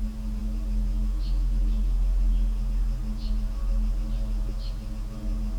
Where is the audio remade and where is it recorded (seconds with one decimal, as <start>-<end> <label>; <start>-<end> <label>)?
0.0-5.6 recorded